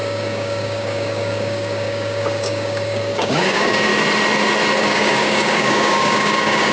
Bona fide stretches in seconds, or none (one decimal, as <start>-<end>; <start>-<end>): 3.9-4.8